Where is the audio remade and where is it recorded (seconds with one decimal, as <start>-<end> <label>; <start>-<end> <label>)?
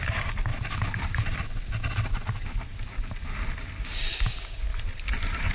0.0-0.5 remade; 0.5-3.8 recorded; 3.8-4.7 remade; 4.7-5.5 recorded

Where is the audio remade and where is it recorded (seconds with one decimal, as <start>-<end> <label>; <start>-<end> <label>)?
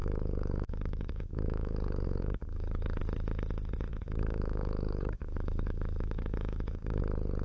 0.0-3.0 remade; 3.0-3.9 recorded; 3.9-7.0 remade; 7.0-7.4 recorded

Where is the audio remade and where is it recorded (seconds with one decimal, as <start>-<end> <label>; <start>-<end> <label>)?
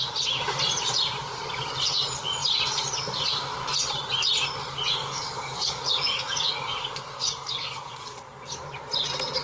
0.0-5.0 recorded; 5.0-8.7 remade; 8.7-9.4 recorded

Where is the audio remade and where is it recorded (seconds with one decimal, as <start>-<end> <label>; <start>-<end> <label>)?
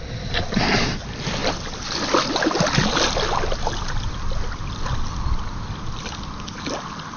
0.0-7.2 recorded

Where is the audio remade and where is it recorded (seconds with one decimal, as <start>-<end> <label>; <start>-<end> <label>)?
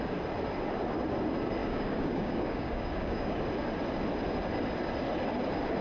0.0-1.6 recorded; 1.6-3.4 remade; 3.4-5.8 recorded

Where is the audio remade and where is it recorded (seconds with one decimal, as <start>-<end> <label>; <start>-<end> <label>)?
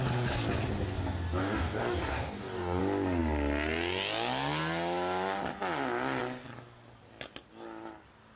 0.0-1.4 recorded; 1.4-2.8 remade; 2.8-8.4 recorded